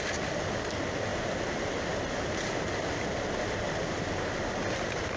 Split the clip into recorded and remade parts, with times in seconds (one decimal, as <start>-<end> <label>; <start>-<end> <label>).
0.0-5.2 recorded